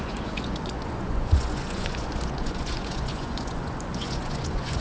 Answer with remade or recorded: remade